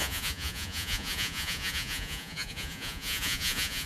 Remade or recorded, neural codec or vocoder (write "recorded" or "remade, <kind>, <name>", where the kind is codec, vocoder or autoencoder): remade, vocoder, Vocos